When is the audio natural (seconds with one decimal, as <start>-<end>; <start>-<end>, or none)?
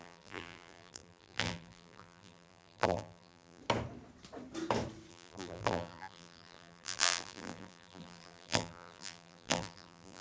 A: 3.6-5.1